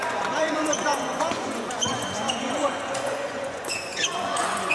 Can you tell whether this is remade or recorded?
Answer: remade